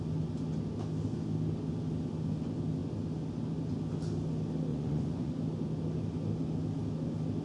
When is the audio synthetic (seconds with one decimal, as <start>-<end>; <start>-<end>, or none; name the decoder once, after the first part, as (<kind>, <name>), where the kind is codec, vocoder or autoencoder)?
4.7-5.3 (vocoder, Vocos)